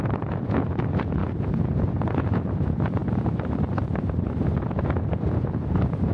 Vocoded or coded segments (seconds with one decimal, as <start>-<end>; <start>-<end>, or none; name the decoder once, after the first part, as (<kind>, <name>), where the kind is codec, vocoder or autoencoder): 0.0-3.0 (vocoder, Vocos); 4.8-6.1